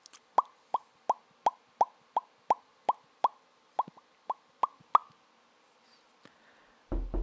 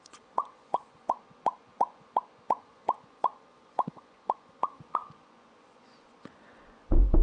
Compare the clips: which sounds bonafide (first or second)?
first